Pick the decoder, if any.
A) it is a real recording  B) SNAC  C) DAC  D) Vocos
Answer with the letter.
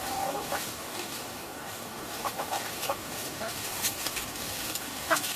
C